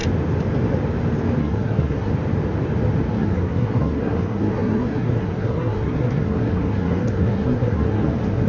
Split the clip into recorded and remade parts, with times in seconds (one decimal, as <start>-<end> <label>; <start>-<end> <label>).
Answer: 0.0-1.4 recorded; 1.4-2.1 remade; 2.1-3.1 recorded; 3.1-8.5 remade